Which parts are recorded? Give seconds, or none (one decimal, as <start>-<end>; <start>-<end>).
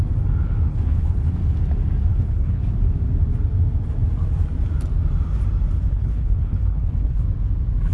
0.0-0.7; 1.3-2.1; 2.6-5.9; 7.2-7.9